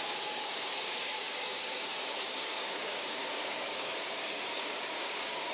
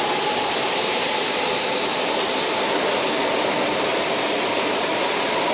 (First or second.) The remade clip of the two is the first